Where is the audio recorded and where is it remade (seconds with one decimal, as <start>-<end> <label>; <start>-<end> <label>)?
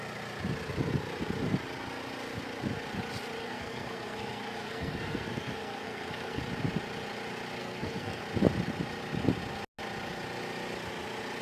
0.0-3.4 recorded; 3.4-6.4 remade; 6.4-7.6 recorded; 7.6-8.2 remade; 8.2-11.4 recorded